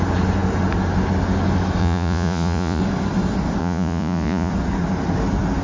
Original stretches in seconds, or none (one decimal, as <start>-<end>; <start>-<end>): 0.0-1.8; 2.8-3.6; 4.5-5.6